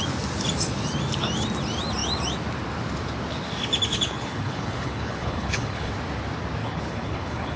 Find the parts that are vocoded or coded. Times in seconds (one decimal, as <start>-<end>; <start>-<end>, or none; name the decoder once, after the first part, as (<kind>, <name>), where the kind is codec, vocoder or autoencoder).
3.9-5.9 (codec, HILCodec); 6.6-7.6